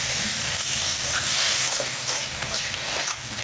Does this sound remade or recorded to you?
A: remade